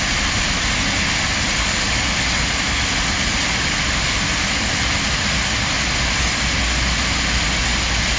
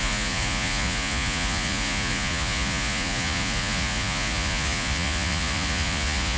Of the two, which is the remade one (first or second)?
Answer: second